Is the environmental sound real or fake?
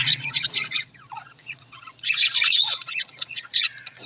fake